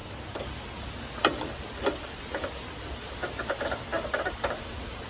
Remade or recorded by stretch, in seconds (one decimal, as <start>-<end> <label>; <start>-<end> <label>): 0.0-3.1 recorded; 3.1-5.1 remade